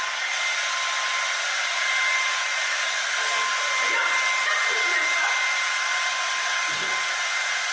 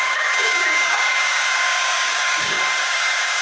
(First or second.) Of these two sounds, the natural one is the first